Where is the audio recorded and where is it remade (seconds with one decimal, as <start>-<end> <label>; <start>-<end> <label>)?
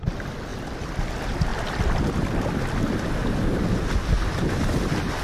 0.0-0.5 recorded; 0.5-1.1 remade; 1.1-5.2 recorded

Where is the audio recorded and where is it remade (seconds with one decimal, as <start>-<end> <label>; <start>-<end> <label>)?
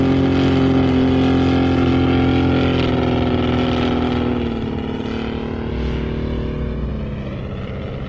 0.0-6.9 recorded; 6.9-8.1 remade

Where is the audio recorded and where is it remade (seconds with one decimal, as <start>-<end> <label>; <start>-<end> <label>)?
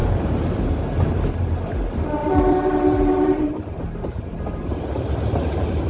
0.0-2.2 recorded; 2.2-5.1 remade; 5.1-5.9 recorded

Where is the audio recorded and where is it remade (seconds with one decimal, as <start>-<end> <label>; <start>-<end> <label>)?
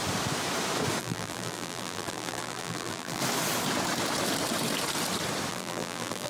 0.0-1.0 recorded; 1.0-3.2 remade; 3.2-5.5 recorded; 5.5-6.3 remade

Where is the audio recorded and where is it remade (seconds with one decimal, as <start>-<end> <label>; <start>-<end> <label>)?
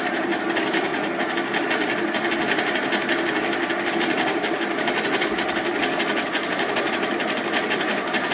0.0-0.9 remade; 0.9-3.9 recorded; 3.9-5.7 remade; 5.7-6.5 recorded; 6.5-8.3 remade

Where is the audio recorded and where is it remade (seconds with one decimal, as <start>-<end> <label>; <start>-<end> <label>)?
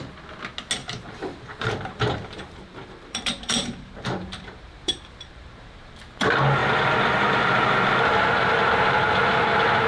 0.0-0.8 recorded; 0.8-6.0 remade; 6.0-9.9 recorded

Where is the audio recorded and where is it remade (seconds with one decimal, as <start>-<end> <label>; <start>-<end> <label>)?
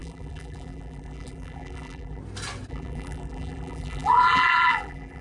0.0-2.2 remade; 2.2-2.7 recorded; 2.7-5.2 remade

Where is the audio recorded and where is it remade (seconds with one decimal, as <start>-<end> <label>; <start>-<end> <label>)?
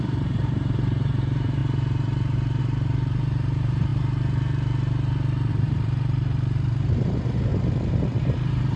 0.0-3.9 remade; 3.9-5.5 recorded; 5.5-7.5 remade; 7.5-8.2 recorded; 8.2-8.8 remade